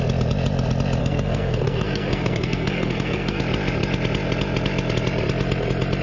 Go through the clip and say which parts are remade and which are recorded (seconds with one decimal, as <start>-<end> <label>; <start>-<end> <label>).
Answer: 0.0-1.0 recorded; 1.0-3.4 remade; 3.4-6.0 recorded